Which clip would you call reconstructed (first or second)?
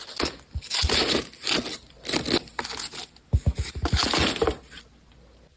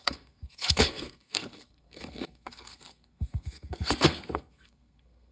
second